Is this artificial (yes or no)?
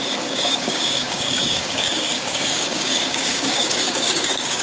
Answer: yes